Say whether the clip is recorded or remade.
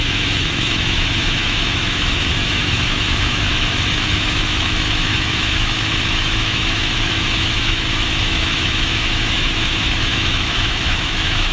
remade